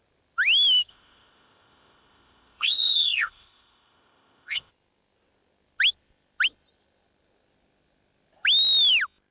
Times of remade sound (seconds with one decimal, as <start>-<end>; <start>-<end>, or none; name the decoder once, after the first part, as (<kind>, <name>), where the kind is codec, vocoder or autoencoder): 0.9-4.7 (codec, ZipCodec)

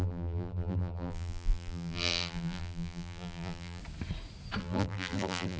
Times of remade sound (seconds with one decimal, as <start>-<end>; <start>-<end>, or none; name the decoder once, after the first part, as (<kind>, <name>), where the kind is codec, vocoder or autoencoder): 0.0-3.8 (vocoder, BigVGAN v2); 4.6-5.6

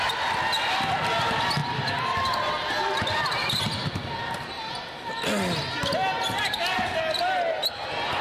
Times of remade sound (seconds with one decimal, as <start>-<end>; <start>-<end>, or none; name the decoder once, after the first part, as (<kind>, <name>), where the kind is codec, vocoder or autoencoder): none

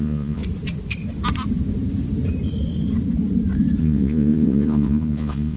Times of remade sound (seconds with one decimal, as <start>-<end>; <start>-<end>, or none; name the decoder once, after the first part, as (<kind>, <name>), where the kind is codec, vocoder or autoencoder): 0.0-0.4 (vocoder, Vocos); 3.8-5.6

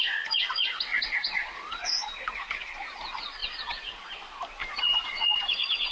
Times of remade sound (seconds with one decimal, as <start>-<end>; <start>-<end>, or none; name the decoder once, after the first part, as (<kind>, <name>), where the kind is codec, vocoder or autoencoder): 0.9-2.0 (vocoder, Vocos); 3.4-4.0; 4.6-5.4

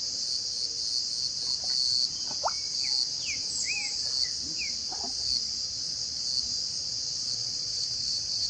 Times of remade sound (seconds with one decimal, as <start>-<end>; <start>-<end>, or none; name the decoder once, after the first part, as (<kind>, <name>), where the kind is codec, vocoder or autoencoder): 7.4-8.5 (vocoder, WaveNeXt)